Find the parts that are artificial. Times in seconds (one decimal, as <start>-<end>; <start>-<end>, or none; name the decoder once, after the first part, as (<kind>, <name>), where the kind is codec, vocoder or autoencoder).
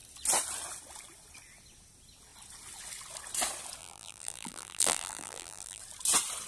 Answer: 3.8-5.8 (vocoder, BigVGAN v2)